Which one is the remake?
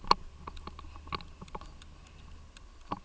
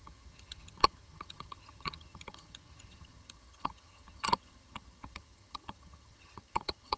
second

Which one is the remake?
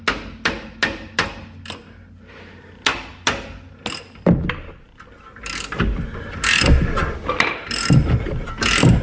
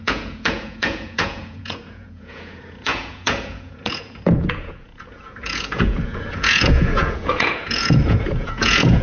second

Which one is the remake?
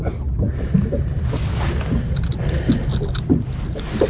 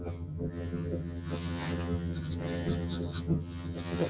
second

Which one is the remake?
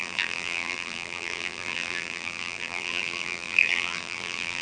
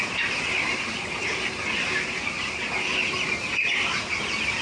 first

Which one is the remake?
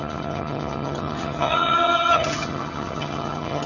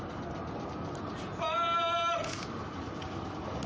first